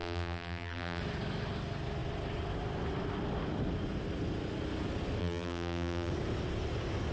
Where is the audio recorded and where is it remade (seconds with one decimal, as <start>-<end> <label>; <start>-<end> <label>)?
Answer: 0.0-1.0 remade; 1.0-5.2 recorded; 5.2-6.1 remade; 6.1-7.1 recorded